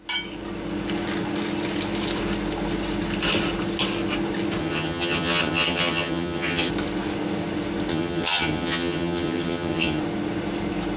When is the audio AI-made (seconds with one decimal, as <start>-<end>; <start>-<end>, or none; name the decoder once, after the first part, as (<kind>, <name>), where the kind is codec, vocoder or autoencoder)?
4.6-6.7 (vocoder, HiFi-GAN); 7.9-10.0